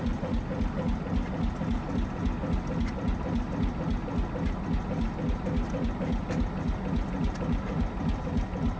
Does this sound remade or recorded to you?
recorded